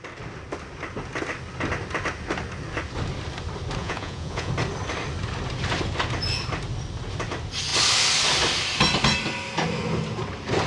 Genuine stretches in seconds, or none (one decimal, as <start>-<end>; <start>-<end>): 0.0-3.8; 4.5-10.7